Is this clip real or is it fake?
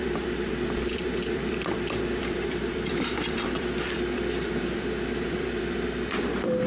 fake